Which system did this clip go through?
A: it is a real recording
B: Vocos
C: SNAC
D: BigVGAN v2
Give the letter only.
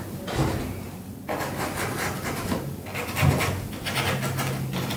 A